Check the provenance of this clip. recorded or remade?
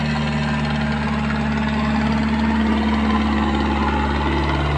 recorded